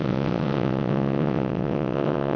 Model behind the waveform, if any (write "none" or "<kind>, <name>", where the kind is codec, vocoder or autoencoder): vocoder, WaveNeXt